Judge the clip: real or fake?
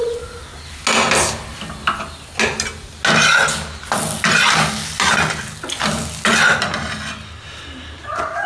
real